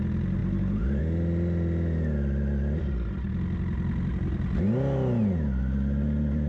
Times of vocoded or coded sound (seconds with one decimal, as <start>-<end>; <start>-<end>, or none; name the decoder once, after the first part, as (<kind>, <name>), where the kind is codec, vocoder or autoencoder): 0.4-1.0 (vocoder, BigVGAN v2)